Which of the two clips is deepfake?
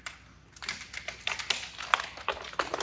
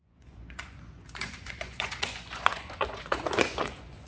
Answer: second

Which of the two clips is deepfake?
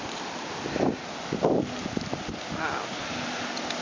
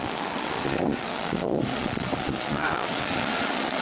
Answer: second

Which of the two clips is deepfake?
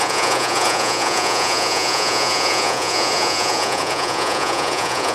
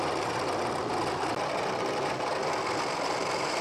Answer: first